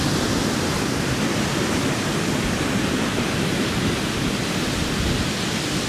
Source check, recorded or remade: recorded